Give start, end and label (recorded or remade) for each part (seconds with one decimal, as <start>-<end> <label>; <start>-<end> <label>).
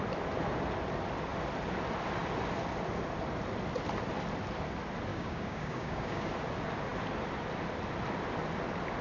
0.0-5.1 recorded; 5.1-6.3 remade; 6.3-9.0 recorded